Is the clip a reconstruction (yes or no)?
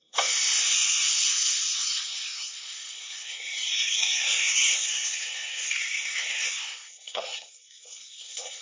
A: yes